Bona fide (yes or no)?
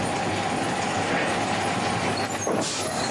yes